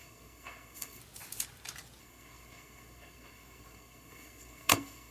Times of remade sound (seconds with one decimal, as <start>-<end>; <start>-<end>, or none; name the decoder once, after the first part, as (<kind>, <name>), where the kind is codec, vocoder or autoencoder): 0.0-1.0 (codec, SNAC); 2.0-5.1